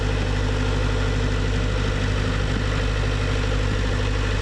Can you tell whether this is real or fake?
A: real